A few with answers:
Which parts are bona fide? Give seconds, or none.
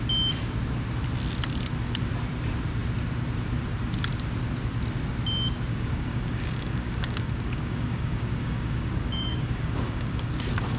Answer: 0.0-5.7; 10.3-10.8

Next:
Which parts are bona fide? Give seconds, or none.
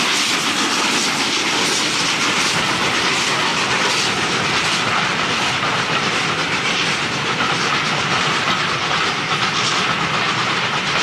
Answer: 0.0-11.0